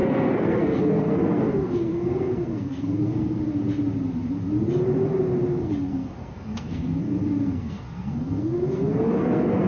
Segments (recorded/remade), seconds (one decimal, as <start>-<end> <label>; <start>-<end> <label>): 0.0-3.4 remade; 3.4-5.6 recorded; 5.6-9.7 remade